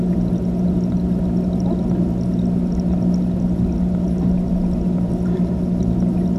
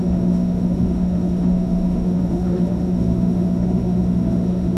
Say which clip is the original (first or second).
first